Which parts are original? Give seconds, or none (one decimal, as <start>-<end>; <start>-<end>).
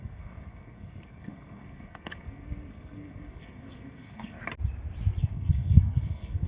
4.4-5.2